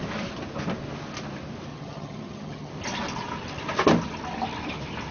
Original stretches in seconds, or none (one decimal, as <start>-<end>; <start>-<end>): 0.0-1.7; 2.7-5.1